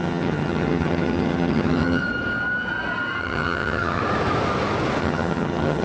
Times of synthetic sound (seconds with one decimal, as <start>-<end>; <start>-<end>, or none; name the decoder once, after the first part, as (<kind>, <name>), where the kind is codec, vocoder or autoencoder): 0.0-2.0 (vocoder, HiFi-GAN); 3.2-4.0; 5.0-5.8